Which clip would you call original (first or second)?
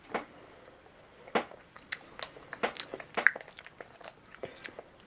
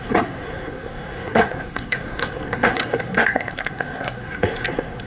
first